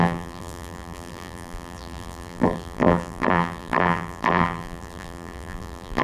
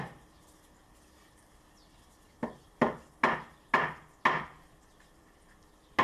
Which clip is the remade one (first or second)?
first